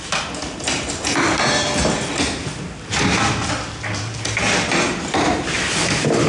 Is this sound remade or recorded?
recorded